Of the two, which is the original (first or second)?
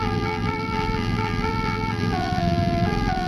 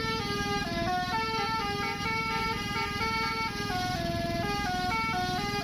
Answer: second